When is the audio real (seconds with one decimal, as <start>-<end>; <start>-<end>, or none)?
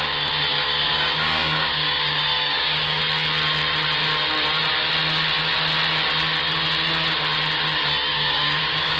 0.0-0.5; 3.0-8.1